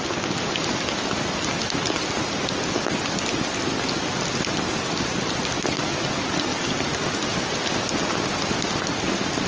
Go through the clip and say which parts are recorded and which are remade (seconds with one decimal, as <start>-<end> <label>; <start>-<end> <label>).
0.0-9.5 recorded